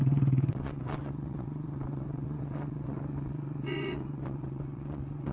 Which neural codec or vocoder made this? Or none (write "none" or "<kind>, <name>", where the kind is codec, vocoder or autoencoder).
vocoder, WaveNeXt